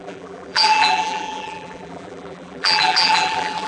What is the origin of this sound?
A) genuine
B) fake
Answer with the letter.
B